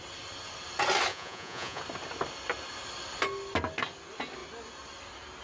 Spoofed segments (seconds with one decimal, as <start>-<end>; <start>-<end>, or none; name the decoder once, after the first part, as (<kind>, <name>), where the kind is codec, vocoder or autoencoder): 1.1-1.8 (vocoder, Vocos)